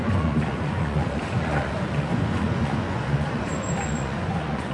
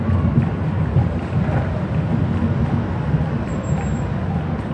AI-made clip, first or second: first